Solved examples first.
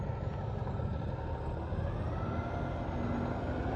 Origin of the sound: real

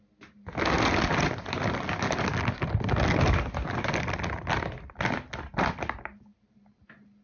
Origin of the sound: real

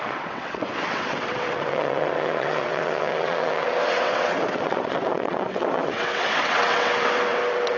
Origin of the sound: fake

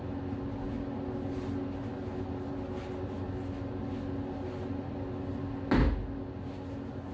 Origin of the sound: real